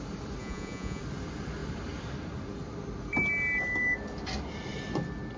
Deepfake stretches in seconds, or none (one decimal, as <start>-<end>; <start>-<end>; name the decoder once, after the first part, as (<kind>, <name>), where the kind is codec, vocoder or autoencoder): 0.4-1.0 (vocoder, Vocos)